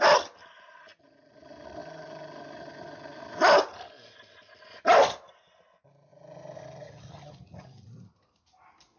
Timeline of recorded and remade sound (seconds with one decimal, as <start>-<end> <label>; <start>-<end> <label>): 0.0-9.0 recorded